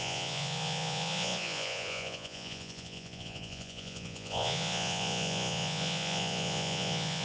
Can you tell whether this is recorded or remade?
remade